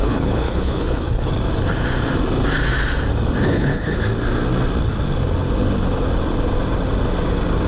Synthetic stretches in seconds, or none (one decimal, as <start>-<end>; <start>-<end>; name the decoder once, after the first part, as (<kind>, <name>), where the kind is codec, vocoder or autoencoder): 0.0-1.3 (codec, HILCodec); 3.5-4.0